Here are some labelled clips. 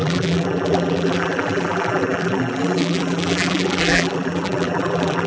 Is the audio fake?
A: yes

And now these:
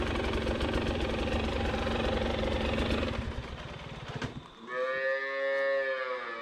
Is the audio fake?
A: no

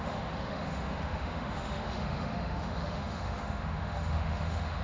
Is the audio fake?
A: yes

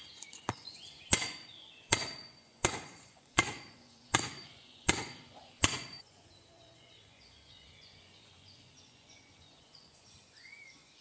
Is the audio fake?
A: yes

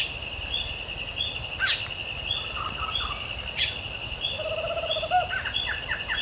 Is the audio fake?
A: no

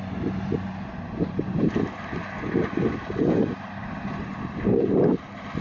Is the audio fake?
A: no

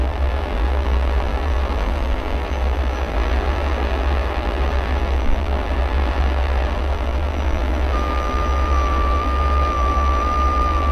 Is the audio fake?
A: yes